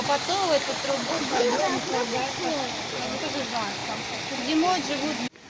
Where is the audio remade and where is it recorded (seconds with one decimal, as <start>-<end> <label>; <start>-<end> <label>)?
0.0-1.0 recorded; 1.0-1.6 remade; 1.6-5.5 recorded